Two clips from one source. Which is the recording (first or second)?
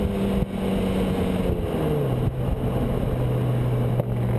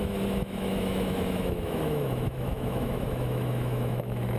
first